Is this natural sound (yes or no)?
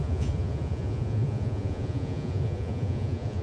no